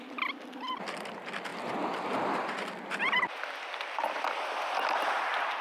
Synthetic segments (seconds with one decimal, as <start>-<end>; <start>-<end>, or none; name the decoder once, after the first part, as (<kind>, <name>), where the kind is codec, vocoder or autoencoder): none